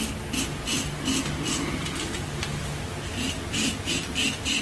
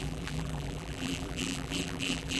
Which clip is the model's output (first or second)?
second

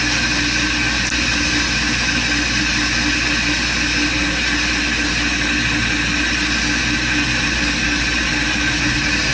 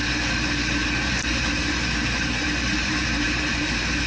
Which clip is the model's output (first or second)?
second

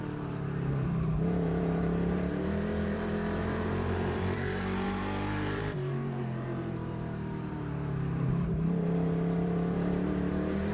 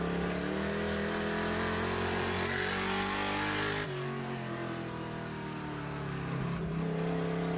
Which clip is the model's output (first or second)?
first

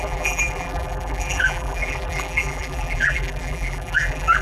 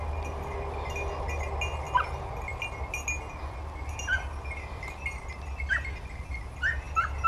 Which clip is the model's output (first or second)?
first